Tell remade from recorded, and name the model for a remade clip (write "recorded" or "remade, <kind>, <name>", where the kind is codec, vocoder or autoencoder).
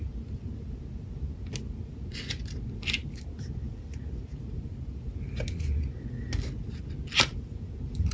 recorded